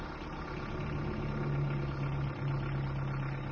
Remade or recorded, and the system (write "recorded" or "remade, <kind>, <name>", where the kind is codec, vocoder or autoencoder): recorded